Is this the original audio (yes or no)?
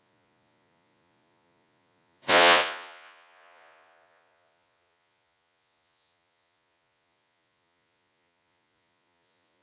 no